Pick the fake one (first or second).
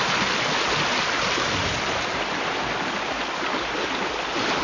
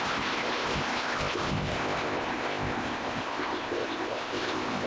second